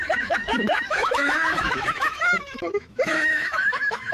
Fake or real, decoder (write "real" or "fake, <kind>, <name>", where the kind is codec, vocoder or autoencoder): fake, autoencoder, DAC-VAE